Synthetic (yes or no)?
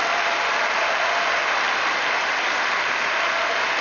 no